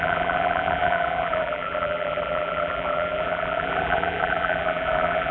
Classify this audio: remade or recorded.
remade